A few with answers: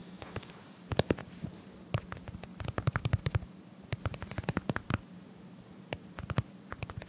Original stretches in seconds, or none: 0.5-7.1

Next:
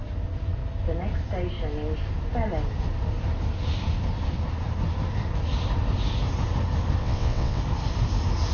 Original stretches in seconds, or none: 0.0-7.0; 7.6-8.5